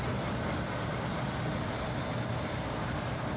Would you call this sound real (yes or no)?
no